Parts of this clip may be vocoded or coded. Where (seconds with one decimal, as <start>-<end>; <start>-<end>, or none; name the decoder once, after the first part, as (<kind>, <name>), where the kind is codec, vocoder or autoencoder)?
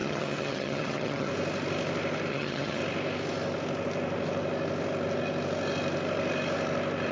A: 0.0-1.3 (vocoder, HiFi-GAN); 2.3-2.8